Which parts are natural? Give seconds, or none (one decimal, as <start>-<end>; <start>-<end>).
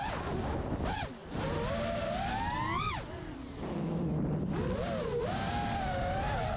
0.0-6.6